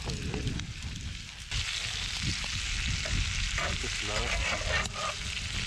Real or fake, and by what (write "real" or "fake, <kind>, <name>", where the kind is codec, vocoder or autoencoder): real